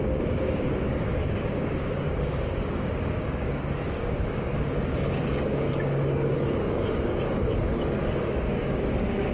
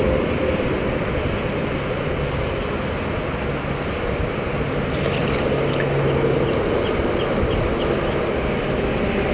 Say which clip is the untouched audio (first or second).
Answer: second